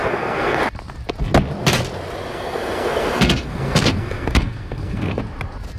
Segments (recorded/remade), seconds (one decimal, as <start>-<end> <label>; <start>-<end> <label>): 0.0-0.6 remade; 0.6-2.3 recorded; 2.3-5.2 remade; 5.2-5.8 recorded